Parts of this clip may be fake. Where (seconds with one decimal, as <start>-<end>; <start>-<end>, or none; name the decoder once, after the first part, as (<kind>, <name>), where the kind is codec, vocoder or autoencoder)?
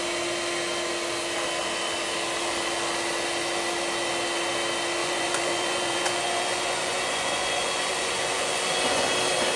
5.0-9.1 (vocoder, Vocos)